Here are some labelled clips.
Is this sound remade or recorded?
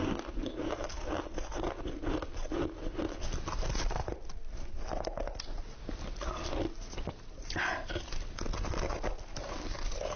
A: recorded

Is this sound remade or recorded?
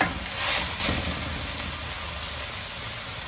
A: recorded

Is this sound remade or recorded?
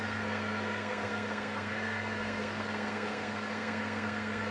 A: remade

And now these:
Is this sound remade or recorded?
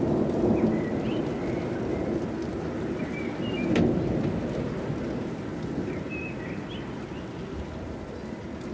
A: recorded